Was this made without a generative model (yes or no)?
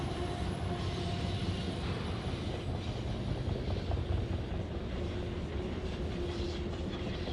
yes